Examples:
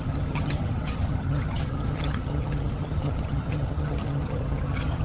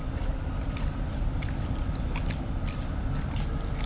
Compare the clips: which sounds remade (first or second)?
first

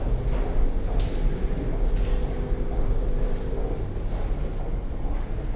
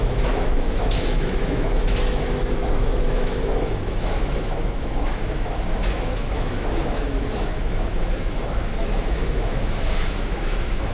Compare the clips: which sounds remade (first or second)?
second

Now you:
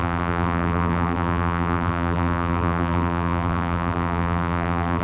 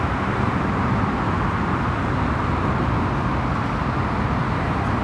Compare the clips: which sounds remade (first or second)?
first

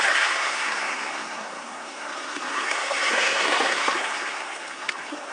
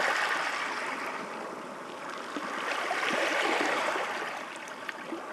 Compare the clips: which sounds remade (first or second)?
first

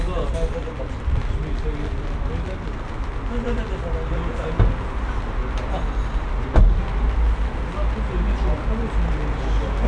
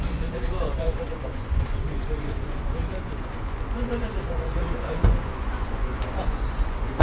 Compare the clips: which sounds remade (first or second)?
second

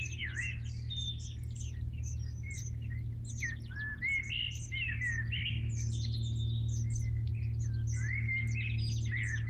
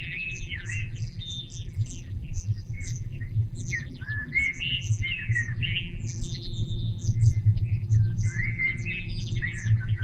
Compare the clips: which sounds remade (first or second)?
second